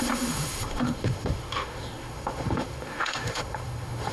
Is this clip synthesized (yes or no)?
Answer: yes